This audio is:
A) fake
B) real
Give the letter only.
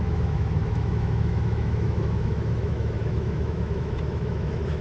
A